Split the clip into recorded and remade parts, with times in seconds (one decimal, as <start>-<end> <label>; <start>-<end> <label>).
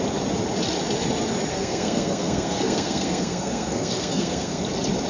0.0-1.5 recorded; 1.5-4.6 remade; 4.6-5.1 recorded